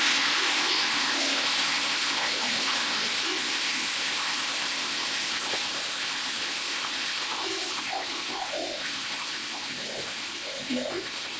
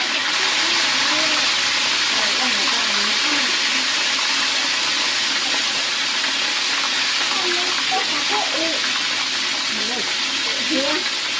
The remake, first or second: first